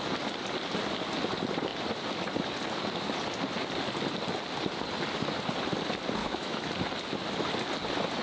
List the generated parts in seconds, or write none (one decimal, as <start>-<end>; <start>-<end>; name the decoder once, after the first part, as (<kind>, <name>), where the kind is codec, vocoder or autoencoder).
6.2-6.7 (autoencoder, DAC-VAE)